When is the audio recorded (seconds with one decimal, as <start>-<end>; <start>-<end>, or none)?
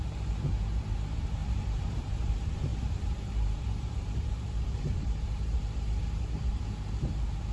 0.0-1.4; 2.3-2.7; 6.6-7.5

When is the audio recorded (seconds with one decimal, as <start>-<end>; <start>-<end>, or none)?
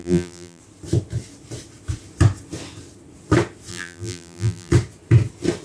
0.6-3.7; 4.7-5.6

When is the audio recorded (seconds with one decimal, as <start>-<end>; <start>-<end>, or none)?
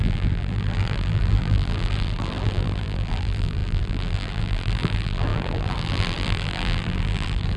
none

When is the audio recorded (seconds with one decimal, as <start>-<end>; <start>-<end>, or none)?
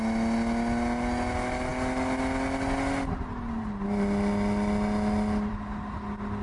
0.0-6.4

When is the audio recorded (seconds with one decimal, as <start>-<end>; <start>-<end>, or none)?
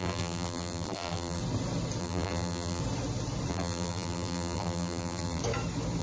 1.4-2.0; 2.8-3.5; 5.4-6.0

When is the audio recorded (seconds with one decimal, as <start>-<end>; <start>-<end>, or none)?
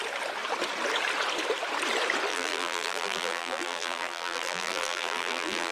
0.0-2.3